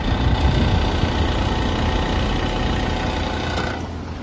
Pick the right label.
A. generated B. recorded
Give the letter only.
B